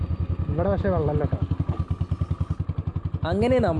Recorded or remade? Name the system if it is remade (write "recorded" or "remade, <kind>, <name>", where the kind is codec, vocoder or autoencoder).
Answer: recorded